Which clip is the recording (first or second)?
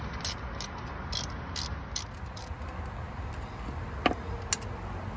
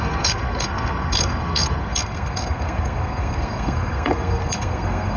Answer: first